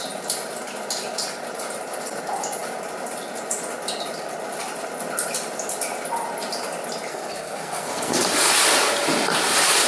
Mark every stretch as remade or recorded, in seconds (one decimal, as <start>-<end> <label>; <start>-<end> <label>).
0.0-7.1 recorded; 7.1-8.2 remade; 8.2-9.9 recorded